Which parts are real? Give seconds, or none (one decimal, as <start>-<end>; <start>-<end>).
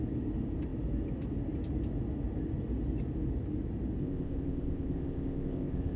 0.0-4.0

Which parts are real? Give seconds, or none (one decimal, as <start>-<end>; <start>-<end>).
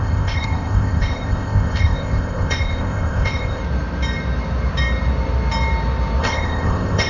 3.6-6.2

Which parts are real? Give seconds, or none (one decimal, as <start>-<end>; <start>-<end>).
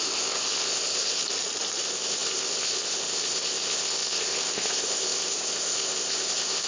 1.2-1.8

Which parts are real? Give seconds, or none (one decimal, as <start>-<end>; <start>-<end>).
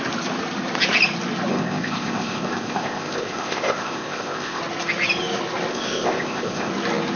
0.0-1.5; 4.6-5.7; 6.7-7.2